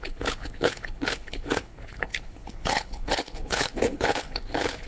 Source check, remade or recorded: remade